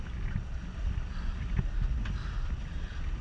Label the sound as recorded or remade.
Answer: recorded